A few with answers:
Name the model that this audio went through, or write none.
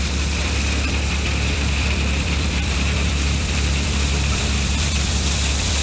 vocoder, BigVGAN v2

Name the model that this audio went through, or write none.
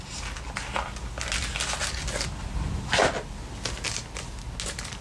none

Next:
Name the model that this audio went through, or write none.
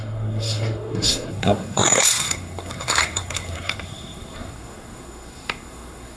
codec, SNAC